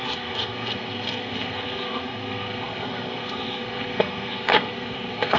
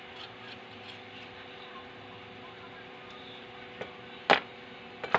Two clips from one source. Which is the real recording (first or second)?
second